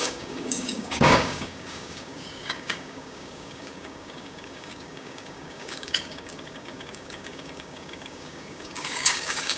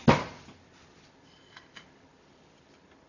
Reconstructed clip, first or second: first